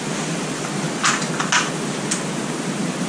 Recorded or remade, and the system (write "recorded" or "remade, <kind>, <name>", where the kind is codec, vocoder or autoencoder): recorded